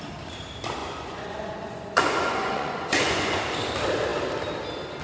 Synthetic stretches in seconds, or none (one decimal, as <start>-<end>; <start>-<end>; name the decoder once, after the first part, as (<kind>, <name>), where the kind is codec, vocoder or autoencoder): 0.8-3.4 (vocoder, Vocos)